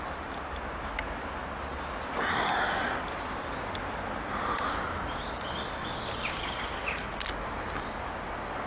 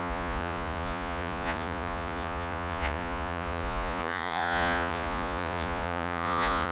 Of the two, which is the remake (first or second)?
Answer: second